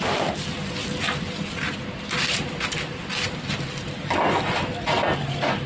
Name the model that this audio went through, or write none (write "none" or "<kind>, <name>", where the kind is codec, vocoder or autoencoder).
none